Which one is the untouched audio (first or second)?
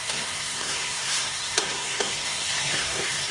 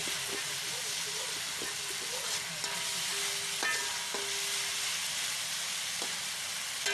second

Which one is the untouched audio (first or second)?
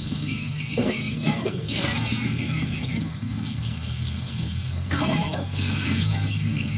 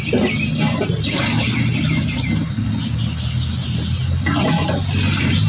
second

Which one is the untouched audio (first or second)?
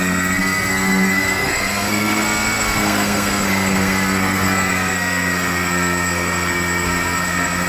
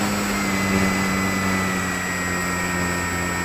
second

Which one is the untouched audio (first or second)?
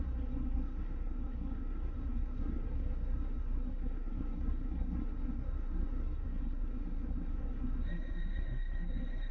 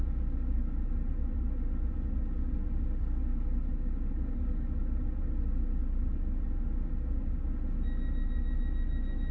second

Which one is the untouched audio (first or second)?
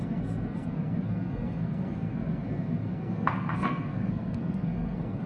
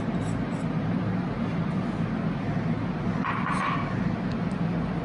second